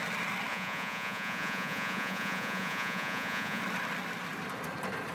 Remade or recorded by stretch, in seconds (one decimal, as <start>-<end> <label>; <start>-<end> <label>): 0.0-0.5 recorded; 0.5-3.6 remade; 3.6-5.1 recorded

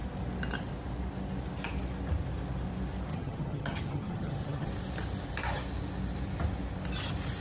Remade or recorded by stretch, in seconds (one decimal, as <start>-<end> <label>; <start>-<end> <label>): 0.0-3.1 recorded; 3.1-4.7 remade; 4.7-7.4 recorded

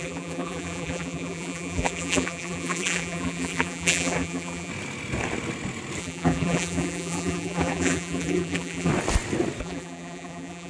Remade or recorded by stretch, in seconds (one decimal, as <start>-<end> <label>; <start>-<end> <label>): 0.0-4.7 remade; 4.7-6.0 recorded; 6.0-8.9 remade; 8.9-9.6 recorded; 9.6-10.7 remade

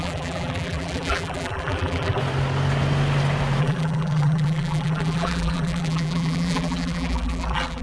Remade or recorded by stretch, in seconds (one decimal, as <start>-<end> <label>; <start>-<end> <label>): 0.0-2.2 remade; 2.2-3.6 recorded; 3.6-7.8 remade